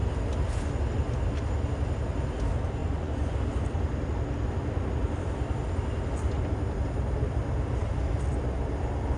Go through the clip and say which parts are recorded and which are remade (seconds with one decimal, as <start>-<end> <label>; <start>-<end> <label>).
0.0-2.8 recorded; 2.8-3.3 remade; 3.3-9.2 recorded